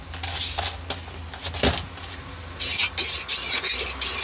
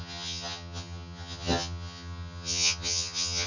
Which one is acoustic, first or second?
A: first